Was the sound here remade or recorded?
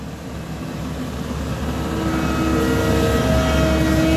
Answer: recorded